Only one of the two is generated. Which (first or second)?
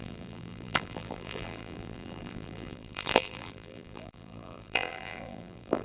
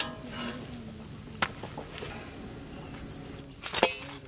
first